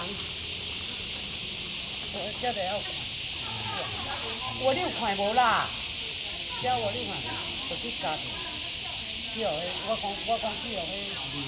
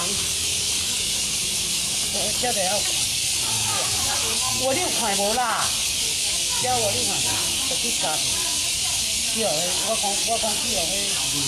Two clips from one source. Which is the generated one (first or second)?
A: second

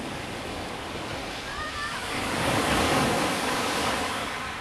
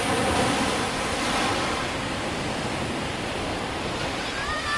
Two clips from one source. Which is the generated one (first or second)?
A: first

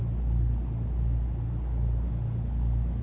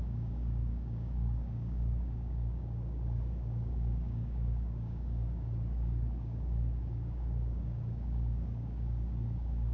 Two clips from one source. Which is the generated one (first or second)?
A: second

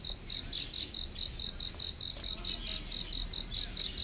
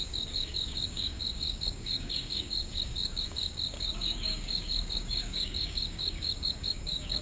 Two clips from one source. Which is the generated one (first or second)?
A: second